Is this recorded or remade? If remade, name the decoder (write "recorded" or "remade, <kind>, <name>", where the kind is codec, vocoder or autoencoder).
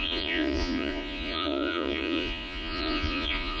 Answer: remade, vocoder, Vocos